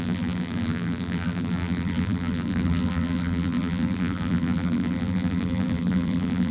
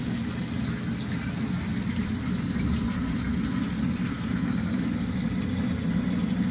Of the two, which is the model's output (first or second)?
first